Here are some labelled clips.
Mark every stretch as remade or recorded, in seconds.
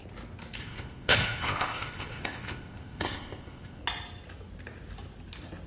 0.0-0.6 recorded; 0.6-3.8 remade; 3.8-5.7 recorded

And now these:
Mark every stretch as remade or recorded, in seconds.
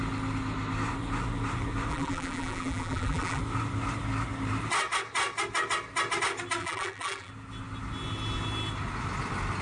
0.0-1.9 recorded; 1.9-3.4 remade; 3.4-6.6 recorded; 6.6-7.3 remade; 7.3-9.6 recorded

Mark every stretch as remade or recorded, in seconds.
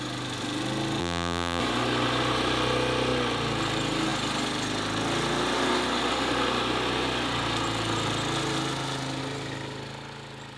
0.0-1.0 recorded; 1.0-1.6 remade; 1.6-10.6 recorded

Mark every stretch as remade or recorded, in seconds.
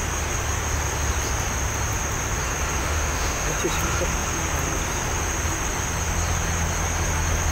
0.0-2.8 recorded; 2.8-3.6 remade; 3.6-7.5 recorded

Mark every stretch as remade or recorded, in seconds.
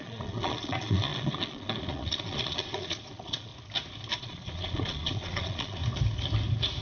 0.0-3.5 remade; 3.5-4.2 recorded; 4.2-5.8 remade; 5.8-6.8 recorded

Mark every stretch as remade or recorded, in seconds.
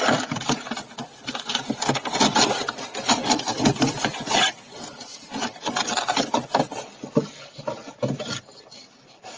0.0-9.4 recorded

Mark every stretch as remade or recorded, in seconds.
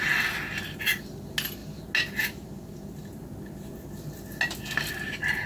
0.0-5.5 recorded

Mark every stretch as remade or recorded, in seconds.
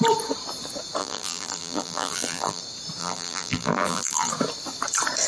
0.0-1.0 recorded; 1.0-2.6 remade; 2.6-3.0 recorded; 3.0-4.3 remade; 4.3-5.3 recorded